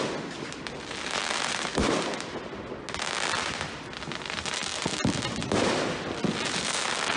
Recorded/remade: recorded